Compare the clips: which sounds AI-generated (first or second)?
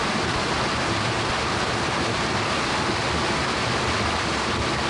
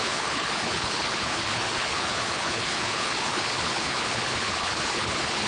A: second